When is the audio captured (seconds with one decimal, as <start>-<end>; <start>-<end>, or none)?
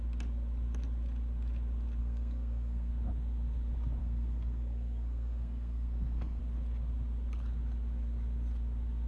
0.0-2.0; 2.9-4.0; 6.4-9.1